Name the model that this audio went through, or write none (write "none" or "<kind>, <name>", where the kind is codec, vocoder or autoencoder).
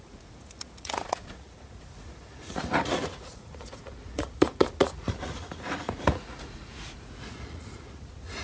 vocoder, Vocos